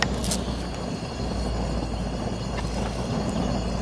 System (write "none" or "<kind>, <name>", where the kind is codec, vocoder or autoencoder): none